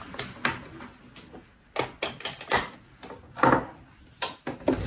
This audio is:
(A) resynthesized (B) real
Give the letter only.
B